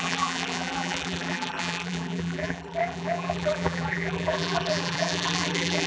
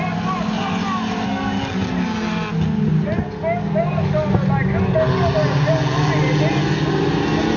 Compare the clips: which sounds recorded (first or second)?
second